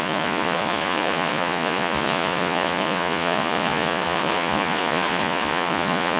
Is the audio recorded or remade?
remade